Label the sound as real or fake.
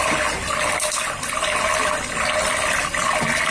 real